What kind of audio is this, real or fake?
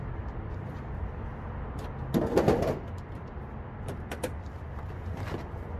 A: real